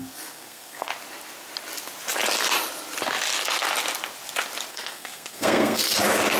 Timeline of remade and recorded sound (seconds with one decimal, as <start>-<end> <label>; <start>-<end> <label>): 0.0-0.9 remade; 0.9-4.7 recorded; 4.7-5.8 remade; 5.8-6.4 recorded